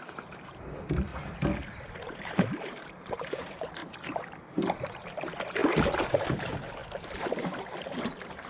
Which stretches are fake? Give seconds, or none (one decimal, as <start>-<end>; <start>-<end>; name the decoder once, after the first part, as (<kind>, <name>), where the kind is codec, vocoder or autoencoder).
0.0-1.1 (vocoder, BigVGAN v2); 1.9-3.8; 4.5-5.6; 6.1-6.8; 8.0-8.5